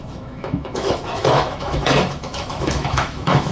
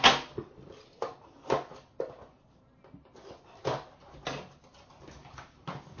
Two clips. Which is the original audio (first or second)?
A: second